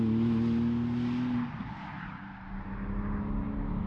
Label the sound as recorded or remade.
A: recorded